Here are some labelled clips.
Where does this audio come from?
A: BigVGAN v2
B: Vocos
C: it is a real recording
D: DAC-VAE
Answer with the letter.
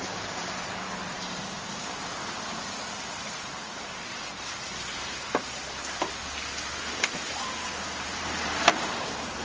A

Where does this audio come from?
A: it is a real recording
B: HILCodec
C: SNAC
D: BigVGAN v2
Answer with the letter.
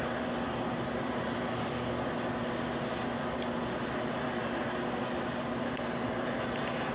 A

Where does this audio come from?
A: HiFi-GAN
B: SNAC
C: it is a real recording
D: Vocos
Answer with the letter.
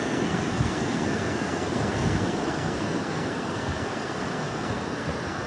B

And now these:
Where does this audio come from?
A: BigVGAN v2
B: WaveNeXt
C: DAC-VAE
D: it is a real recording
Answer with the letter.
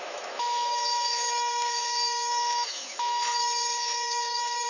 C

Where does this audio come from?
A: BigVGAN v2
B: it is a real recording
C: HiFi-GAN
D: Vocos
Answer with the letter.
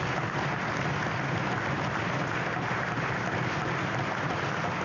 B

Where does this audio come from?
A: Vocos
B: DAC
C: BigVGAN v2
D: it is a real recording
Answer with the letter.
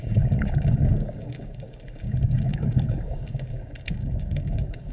B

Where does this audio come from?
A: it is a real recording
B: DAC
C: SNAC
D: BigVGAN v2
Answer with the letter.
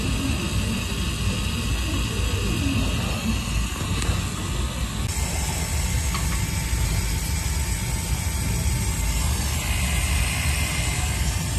A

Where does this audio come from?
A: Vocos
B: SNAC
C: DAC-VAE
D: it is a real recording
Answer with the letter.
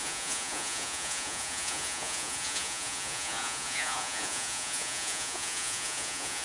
A